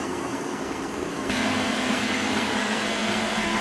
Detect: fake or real fake